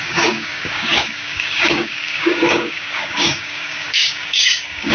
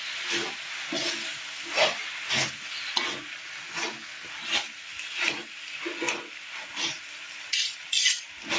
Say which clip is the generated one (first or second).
first